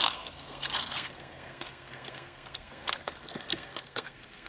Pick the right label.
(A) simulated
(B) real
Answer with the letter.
A